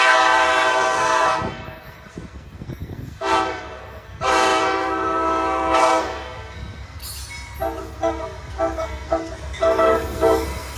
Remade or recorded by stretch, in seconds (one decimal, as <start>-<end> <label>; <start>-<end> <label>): 0.0-7.0 remade; 7.0-7.8 recorded; 7.8-10.8 remade